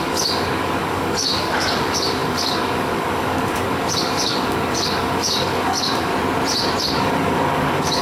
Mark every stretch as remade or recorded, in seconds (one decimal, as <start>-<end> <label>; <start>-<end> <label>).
0.0-6.1 remade; 6.1-6.8 recorded; 6.8-8.0 remade